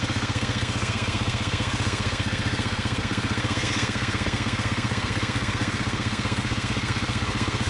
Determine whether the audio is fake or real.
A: fake